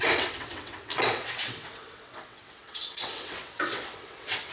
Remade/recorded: remade